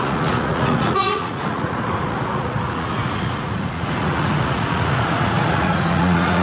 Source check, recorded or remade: remade